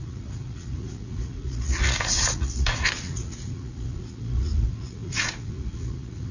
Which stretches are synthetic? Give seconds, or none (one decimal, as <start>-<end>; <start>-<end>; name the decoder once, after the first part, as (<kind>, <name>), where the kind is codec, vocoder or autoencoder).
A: 0.0-6.3 (vocoder, Vocos)